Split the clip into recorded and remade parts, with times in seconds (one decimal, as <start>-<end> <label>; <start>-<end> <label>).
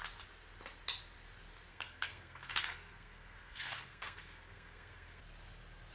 0.0-1.7 recorded; 1.7-5.2 remade; 5.2-5.9 recorded